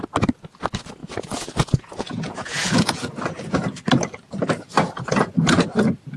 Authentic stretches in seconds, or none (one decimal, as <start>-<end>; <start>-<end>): 0.0-1.0; 3.1-6.2